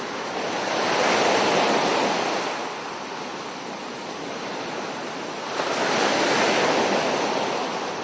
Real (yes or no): yes